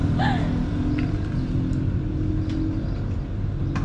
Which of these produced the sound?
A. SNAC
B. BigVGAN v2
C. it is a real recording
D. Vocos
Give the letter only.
C